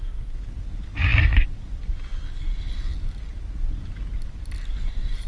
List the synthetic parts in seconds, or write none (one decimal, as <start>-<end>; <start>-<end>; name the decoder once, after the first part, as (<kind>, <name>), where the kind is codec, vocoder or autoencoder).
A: none